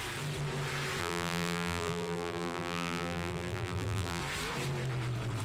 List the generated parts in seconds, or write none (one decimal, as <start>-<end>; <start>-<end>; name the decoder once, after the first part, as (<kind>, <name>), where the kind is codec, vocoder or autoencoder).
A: 1.0-4.2 (vocoder, BigVGAN v2)